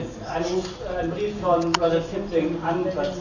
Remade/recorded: recorded